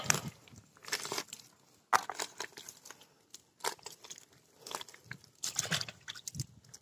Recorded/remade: recorded